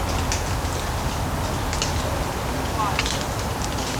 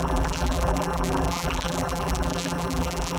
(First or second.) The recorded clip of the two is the first